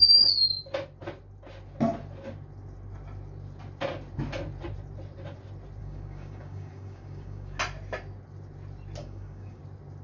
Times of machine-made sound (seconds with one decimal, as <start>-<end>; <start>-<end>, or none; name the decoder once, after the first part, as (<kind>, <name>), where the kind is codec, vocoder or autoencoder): 5.8-7.6 (codec, DAC); 9.0-9.6